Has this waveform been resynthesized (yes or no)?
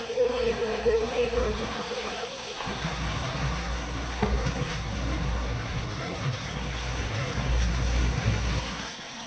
yes